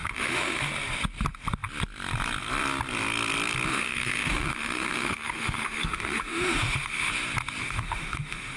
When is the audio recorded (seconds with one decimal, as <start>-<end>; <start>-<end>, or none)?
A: 0.7-3.7; 7.1-7.6